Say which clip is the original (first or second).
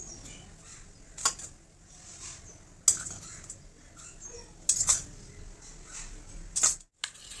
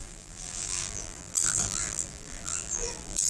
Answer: first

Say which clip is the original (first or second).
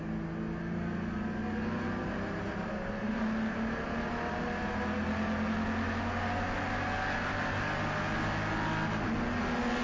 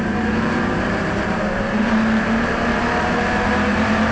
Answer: first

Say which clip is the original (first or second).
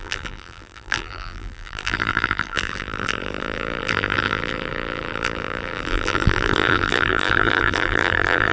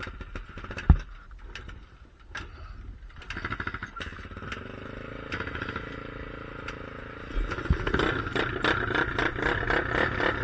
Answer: second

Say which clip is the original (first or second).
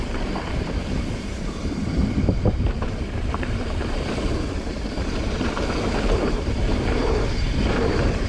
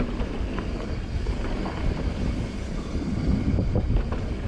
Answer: second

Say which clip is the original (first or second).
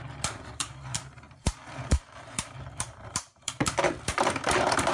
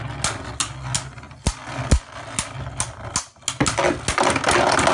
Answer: second